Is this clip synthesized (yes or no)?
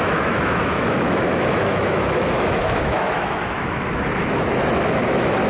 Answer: yes